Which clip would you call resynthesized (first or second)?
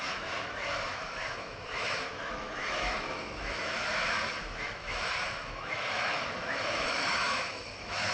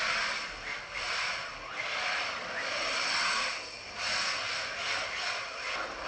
first